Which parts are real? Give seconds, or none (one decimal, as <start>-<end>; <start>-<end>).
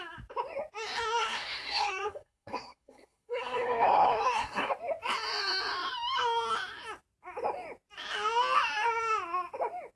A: 0.0-1.2; 4.7-10.0